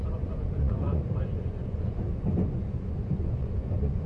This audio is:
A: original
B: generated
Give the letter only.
B